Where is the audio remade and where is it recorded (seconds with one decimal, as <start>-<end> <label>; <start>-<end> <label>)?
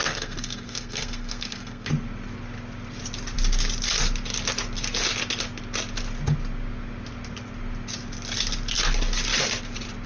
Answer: 0.0-1.9 remade; 1.9-10.1 recorded